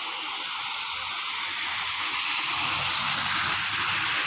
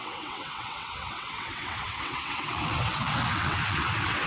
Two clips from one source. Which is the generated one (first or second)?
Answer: second